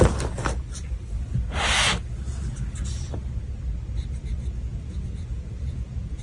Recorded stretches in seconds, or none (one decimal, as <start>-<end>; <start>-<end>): 0.0-4.7